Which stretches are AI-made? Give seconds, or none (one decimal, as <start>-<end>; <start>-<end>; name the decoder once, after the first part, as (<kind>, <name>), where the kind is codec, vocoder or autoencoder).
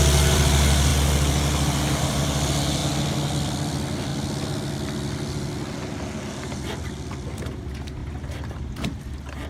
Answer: 0.0-0.9 (vocoder, BigVGAN v2); 2.0-2.8; 3.3-4.1; 6.3-9.5